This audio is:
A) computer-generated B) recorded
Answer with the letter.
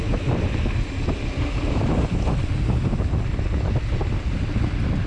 B